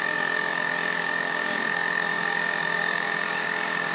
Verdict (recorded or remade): remade